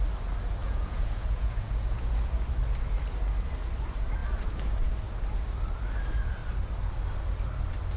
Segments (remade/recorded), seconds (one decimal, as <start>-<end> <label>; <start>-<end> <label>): 0.0-0.6 recorded; 0.6-2.3 remade; 2.3-8.0 recorded